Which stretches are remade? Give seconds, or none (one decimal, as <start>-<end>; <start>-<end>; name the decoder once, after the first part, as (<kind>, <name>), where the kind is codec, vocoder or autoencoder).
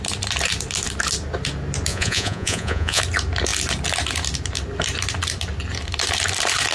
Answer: 1.9-3.0 (vocoder, Vocos)